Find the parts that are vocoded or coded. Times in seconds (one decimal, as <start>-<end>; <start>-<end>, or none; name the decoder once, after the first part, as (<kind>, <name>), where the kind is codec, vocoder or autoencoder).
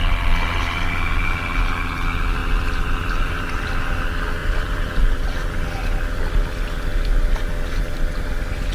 2.4-3.7 (vocoder, BigVGAN v2); 4.4-5.0